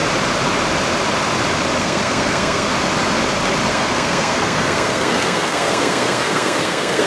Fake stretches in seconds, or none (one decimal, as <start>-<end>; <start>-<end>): 1.8-2.7; 3.7-7.1